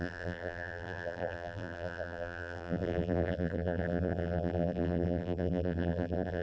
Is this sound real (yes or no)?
no